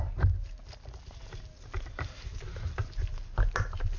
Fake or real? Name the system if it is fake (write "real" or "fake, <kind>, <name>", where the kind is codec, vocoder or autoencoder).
real